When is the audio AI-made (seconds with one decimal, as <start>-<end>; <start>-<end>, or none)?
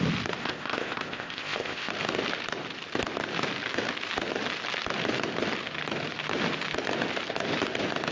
0.4-1.9